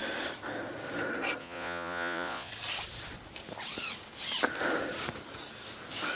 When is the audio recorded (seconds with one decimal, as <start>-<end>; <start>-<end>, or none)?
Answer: 0.0-1.4; 2.5-6.2